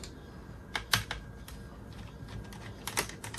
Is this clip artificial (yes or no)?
no